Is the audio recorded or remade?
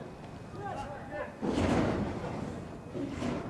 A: recorded